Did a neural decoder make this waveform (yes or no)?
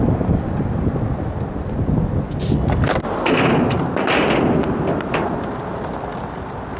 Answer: no